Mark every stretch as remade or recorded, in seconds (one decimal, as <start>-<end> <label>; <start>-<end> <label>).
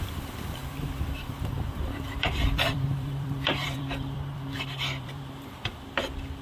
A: 0.0-6.4 remade